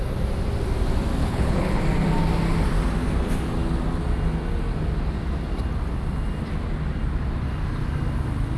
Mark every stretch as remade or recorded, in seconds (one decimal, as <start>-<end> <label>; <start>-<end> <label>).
0.0-1.2 recorded; 1.2-1.8 remade; 1.8-8.6 recorded